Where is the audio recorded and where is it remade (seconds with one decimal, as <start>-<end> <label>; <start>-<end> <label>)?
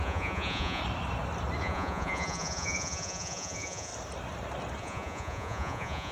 0.0-0.8 remade; 0.8-1.6 recorded; 1.6-3.9 remade; 3.9-4.8 recorded; 4.8-6.1 remade